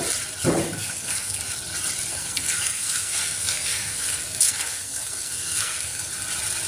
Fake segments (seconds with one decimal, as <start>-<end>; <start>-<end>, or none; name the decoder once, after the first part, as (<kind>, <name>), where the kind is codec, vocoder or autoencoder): 0.6-1.4 (codec, SNAC); 2.1-6.1